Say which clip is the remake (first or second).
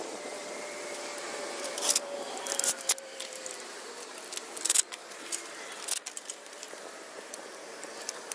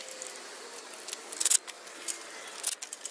first